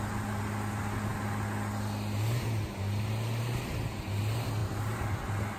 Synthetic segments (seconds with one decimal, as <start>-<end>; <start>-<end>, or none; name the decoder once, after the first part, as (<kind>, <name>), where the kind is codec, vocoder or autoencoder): none